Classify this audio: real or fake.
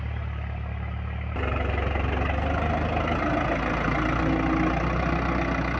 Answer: real